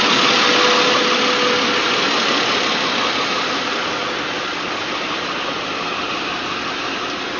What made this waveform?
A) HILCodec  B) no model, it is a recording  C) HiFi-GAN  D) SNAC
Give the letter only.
B